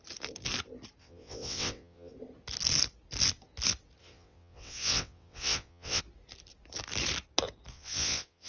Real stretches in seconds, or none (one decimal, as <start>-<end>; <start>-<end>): 0.0-1.0; 2.1-4.0; 6.0-7.7